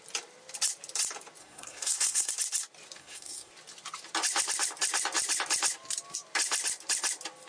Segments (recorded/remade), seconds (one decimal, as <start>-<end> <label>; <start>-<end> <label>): 0.0-1.4 recorded; 1.4-2.3 remade; 2.3-3.0 recorded; 3.0-3.5 remade; 3.5-7.5 recorded